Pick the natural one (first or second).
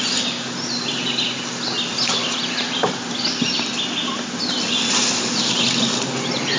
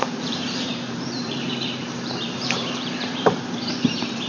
first